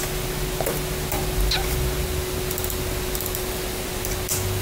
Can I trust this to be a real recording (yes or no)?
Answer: yes